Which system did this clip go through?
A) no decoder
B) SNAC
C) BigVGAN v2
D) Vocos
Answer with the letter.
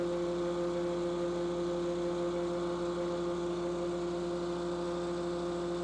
A